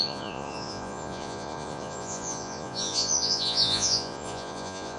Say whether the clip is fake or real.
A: fake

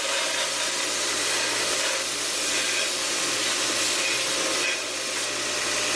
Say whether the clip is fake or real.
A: real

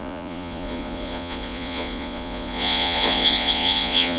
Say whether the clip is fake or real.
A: fake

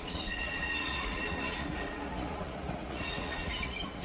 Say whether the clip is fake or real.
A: fake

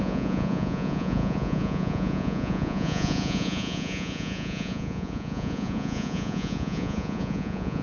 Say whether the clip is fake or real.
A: fake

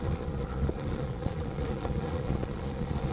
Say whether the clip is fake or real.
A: fake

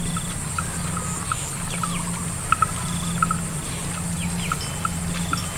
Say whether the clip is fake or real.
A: real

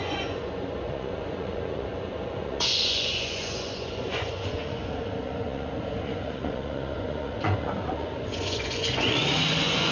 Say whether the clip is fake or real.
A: fake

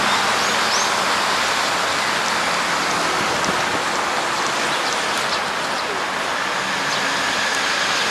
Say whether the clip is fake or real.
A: real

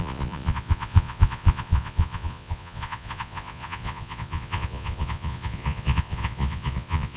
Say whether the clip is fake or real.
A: fake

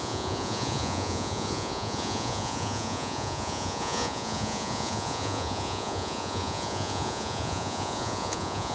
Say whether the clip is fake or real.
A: fake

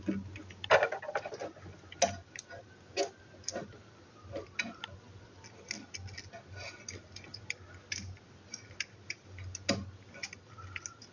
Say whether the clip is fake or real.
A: real